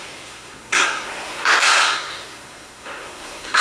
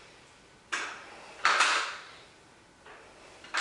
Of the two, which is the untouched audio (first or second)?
second